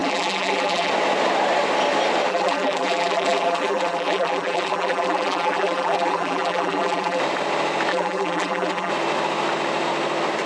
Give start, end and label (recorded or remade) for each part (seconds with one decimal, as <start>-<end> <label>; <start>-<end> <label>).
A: 0.0-0.9 remade; 0.9-2.3 recorded; 2.3-7.2 remade; 7.2-7.9 recorded; 7.9-8.9 remade; 8.9-10.5 recorded